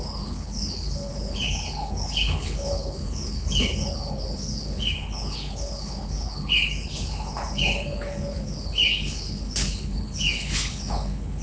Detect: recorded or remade remade